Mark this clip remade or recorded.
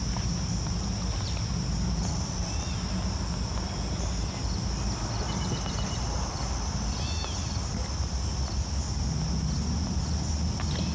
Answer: recorded